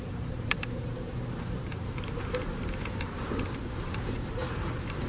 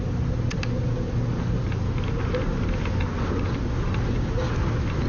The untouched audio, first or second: second